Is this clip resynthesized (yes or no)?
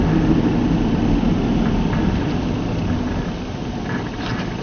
no